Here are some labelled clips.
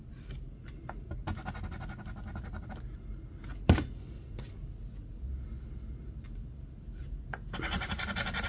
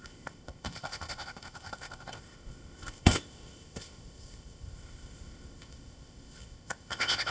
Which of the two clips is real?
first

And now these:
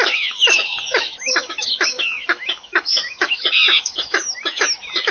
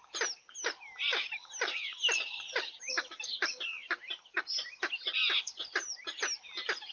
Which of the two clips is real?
second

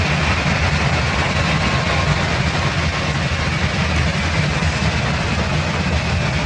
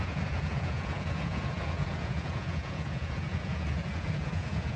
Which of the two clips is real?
first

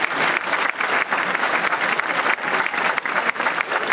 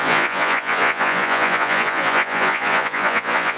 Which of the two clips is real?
first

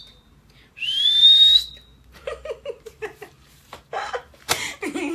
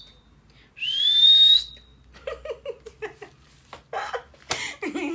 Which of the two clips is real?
second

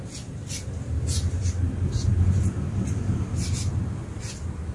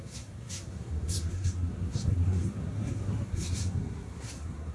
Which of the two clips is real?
first